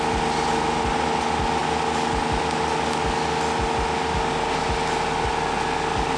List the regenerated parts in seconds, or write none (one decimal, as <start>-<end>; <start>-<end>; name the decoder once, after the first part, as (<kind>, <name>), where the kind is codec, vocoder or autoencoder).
none

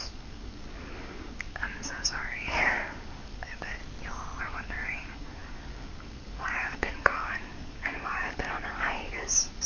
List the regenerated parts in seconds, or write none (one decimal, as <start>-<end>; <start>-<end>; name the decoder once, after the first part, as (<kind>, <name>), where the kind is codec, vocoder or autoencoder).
0.0-3.8 (codec, DAC); 4.4-9.7

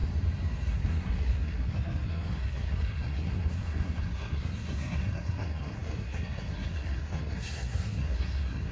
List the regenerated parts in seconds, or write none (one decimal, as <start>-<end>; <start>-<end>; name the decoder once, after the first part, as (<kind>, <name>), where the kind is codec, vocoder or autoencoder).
0.7-8.7 (codec, SNAC)

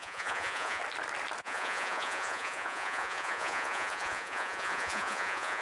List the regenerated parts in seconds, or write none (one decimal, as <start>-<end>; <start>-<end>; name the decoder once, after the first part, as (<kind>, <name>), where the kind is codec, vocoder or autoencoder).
0.0-0.8 (vocoder, Vocos); 1.4-5.6

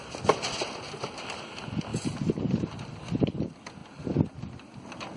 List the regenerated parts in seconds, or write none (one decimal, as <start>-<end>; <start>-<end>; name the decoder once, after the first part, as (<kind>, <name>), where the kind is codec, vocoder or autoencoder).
none

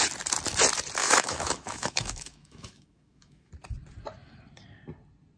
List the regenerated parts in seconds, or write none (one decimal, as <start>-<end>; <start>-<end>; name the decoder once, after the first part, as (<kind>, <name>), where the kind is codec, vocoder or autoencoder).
1.0-3.5 (autoencoder, DAC-VAE)